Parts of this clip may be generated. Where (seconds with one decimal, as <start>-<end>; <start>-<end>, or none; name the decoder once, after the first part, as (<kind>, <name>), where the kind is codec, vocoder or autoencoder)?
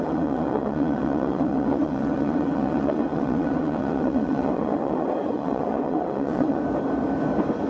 0.0-6.6 (vocoder, WaveNeXt)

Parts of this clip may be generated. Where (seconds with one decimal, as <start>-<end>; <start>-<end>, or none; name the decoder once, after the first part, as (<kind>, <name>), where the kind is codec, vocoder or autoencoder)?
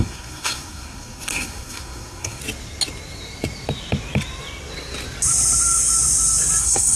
0.0-2.4 (codec, SNAC); 6.6-7.0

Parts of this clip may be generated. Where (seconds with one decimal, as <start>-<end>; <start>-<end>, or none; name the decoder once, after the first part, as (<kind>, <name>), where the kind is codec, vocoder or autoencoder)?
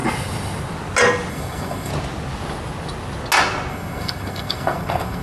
1.3-1.9 (codec, SNAC); 3.7-5.2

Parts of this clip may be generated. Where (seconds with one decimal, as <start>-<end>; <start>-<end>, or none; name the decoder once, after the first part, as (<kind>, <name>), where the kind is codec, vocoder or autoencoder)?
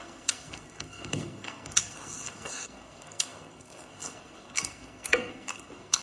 0.0-6.0 (codec, SNAC)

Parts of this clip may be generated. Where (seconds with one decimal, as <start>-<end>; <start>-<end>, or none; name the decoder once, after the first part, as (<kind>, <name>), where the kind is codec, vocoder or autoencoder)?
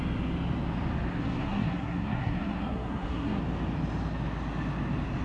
1.1-3.4 (codec, SNAC)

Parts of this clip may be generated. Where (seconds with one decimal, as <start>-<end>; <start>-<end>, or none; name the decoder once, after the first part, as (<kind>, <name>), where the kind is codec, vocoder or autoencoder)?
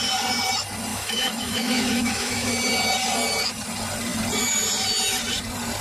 0.9-2.5 (autoencoder, DAC-VAE)